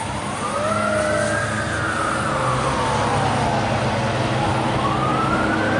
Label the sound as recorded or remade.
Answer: recorded